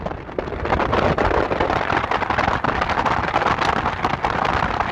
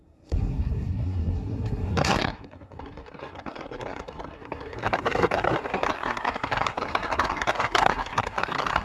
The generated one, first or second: second